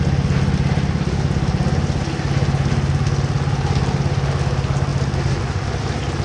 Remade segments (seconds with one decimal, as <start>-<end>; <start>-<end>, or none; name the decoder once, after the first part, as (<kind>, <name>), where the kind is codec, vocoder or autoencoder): none